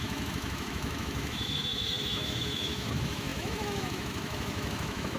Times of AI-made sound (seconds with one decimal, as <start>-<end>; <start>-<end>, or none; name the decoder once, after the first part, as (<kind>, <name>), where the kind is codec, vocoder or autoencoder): 0.0-5.2 (autoencoder, DAC-VAE)